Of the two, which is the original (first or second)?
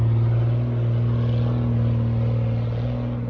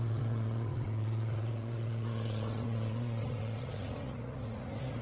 first